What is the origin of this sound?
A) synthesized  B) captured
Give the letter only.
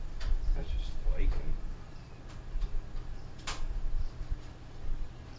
A